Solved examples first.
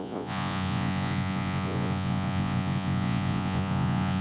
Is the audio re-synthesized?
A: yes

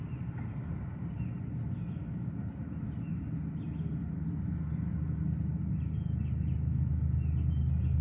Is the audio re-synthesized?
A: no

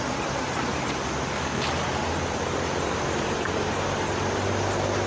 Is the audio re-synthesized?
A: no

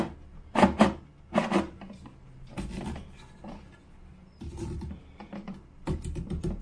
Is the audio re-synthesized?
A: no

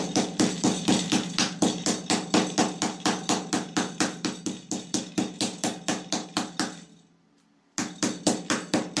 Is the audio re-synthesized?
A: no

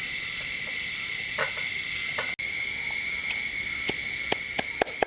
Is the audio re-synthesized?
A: no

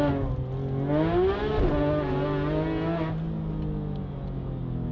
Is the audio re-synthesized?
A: no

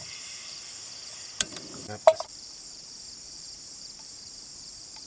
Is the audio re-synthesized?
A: yes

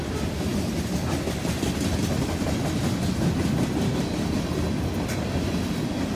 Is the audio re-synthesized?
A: no